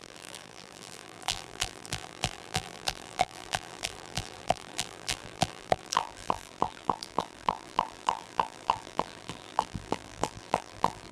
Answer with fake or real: fake